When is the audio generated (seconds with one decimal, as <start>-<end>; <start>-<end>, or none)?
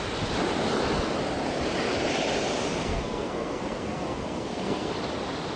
2.8-4.9